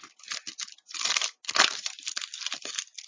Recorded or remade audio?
recorded